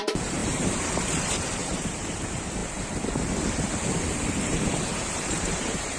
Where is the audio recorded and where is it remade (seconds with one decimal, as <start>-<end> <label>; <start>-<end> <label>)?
0.0-2.6 remade; 2.6-4.4 recorded; 4.4-6.0 remade